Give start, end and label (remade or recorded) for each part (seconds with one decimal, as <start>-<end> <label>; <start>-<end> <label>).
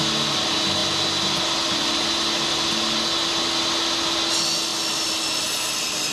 0.0-6.1 recorded